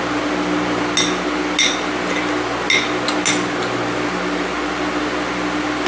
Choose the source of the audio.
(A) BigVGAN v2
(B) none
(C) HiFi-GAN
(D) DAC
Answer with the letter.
B